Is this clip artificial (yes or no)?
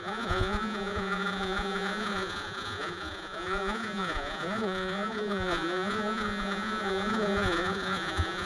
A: yes